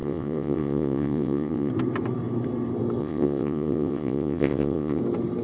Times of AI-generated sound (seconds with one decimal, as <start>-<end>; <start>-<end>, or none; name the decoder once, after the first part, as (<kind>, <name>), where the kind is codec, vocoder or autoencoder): 0.0-1.7 (vocoder, WaveNeXt); 3.0-5.0